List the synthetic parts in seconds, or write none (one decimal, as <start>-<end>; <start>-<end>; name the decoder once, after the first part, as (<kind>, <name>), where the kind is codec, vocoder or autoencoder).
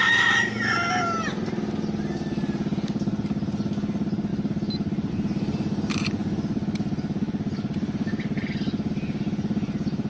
none